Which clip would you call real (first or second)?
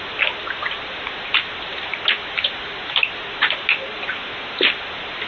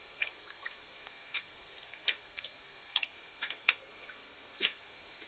first